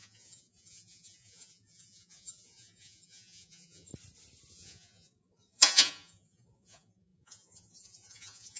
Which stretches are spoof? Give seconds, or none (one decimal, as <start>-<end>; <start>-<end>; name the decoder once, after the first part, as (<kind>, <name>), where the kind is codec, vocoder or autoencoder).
0.0-3.9 (vocoder, Vocos); 4.5-8.6